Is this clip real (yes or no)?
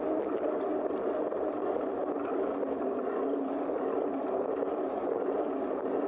yes